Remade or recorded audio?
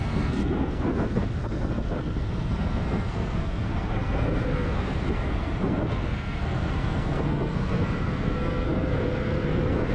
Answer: remade